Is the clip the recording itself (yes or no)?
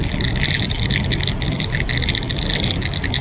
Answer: yes